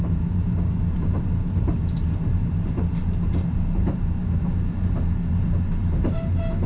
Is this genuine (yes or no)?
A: no